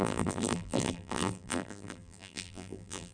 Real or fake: fake